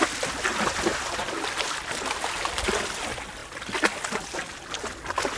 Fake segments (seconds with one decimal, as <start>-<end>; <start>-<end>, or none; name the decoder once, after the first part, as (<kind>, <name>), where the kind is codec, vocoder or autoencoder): none